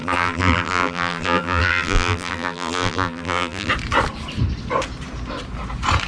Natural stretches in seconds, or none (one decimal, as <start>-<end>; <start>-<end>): 3.7-6.1